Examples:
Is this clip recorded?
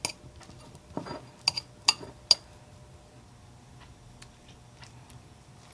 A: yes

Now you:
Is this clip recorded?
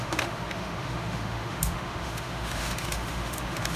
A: no